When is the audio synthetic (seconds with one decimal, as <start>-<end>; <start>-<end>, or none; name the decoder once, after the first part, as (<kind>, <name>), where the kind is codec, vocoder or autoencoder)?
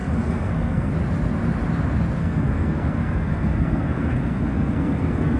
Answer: 0.0-0.9 (codec, SNAC); 2.2-5.4